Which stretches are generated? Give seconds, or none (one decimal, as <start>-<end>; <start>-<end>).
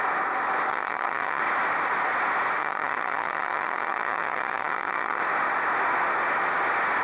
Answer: 0.7-1.4; 2.6-5.2